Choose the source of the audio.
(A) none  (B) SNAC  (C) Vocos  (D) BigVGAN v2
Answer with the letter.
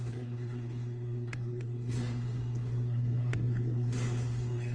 B